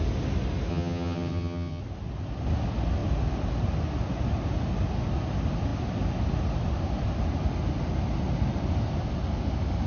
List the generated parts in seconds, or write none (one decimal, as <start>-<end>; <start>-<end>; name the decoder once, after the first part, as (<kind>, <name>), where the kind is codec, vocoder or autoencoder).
0.7-1.8 (vocoder, HiFi-GAN)